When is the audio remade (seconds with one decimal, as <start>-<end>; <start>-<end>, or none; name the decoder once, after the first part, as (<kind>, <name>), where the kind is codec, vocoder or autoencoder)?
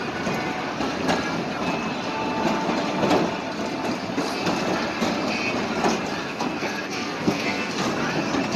6.2-7.7 (codec, SNAC)